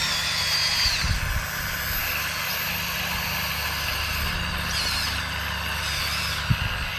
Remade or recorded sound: recorded